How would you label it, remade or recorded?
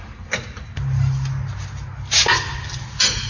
recorded